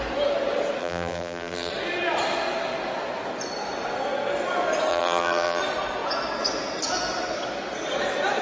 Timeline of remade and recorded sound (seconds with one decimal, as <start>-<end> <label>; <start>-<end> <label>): 0.0-0.8 recorded; 0.8-1.7 remade; 1.7-4.9 recorded; 4.9-5.6 remade; 5.6-8.4 recorded